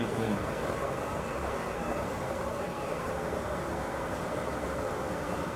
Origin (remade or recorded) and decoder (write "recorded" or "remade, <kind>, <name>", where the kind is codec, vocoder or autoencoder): remade, codec, SNAC